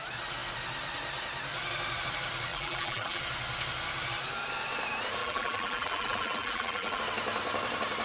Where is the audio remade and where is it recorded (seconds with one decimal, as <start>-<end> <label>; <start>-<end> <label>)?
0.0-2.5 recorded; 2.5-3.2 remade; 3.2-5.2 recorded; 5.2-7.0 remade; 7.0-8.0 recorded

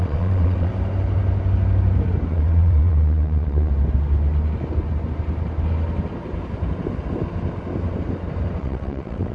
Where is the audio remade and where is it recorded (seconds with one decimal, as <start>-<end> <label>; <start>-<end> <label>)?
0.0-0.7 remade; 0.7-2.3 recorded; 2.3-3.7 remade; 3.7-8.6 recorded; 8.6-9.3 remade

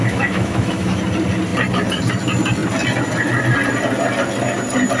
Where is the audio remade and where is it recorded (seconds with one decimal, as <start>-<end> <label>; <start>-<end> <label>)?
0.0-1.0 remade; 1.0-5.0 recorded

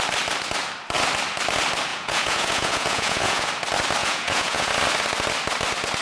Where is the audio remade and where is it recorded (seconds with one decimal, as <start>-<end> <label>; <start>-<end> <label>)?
0.0-1.9 recorded; 1.9-3.5 remade; 3.5-4.0 recorded; 4.0-4.7 remade; 4.7-6.0 recorded